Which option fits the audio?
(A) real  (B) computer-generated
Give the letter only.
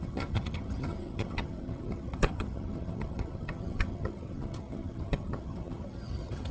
B